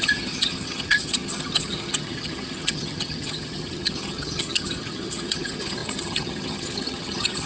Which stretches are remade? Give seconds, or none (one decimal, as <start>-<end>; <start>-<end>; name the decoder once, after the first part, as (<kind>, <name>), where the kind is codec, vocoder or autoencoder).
0.0-7.5 (vocoder, HiFi-GAN)